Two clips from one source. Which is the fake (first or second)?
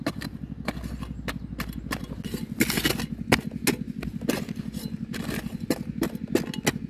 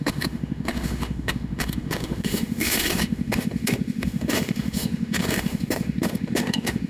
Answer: second